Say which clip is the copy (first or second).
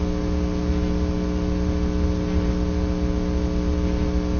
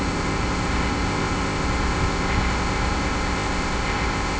second